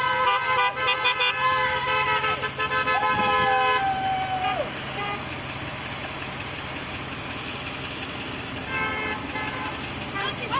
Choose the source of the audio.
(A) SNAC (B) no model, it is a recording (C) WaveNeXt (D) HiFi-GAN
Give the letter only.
B